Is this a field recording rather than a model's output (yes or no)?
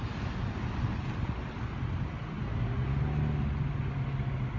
yes